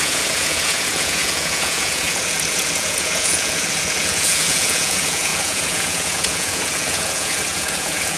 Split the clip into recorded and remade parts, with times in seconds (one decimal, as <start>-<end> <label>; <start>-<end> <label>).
0.0-8.2 remade